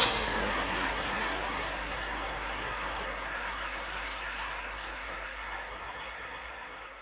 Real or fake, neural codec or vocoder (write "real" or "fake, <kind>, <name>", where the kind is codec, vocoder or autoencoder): fake, codec, SNAC